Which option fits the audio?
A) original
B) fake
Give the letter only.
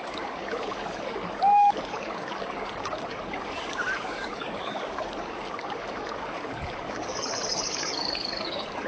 B